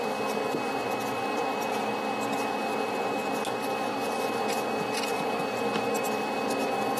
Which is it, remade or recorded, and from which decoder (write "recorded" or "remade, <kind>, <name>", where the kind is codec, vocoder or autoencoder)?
recorded